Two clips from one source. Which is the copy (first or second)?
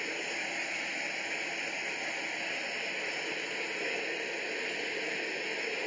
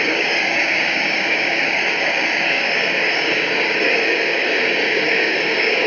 second